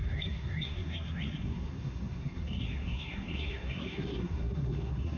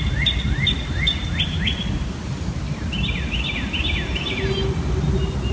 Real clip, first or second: second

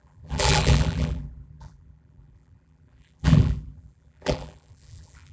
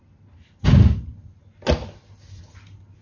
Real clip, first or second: second